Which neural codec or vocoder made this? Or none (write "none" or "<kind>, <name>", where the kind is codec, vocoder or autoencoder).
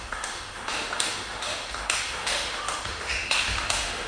autoencoder, DAC-VAE